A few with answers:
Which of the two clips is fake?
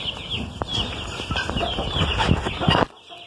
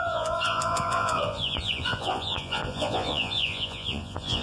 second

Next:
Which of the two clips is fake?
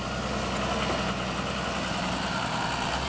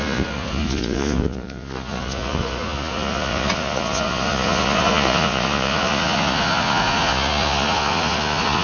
second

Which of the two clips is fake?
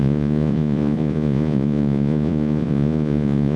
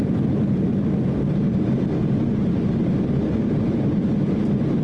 first